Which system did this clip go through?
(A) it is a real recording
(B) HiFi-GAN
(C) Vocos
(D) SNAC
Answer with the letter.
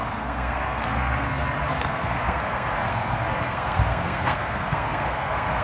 D